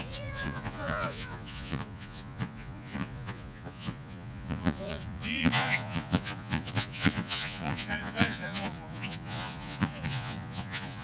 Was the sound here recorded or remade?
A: remade